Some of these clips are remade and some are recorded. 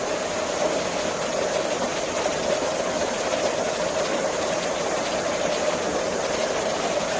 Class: recorded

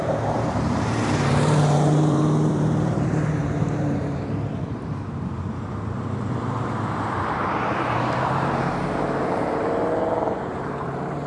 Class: remade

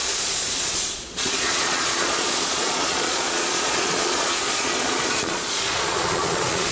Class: remade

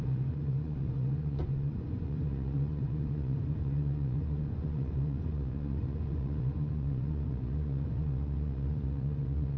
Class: remade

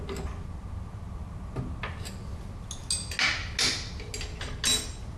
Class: recorded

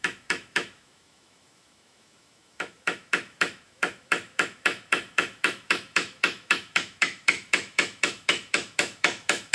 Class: remade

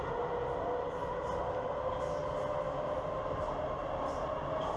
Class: recorded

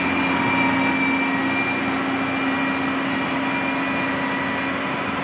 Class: recorded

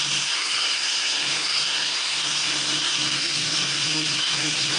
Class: remade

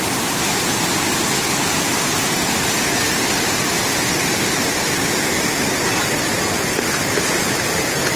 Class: recorded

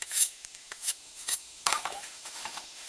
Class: remade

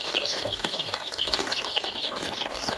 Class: remade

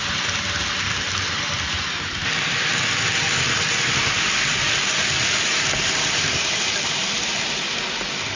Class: recorded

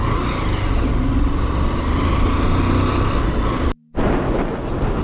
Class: recorded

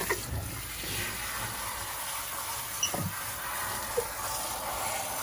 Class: recorded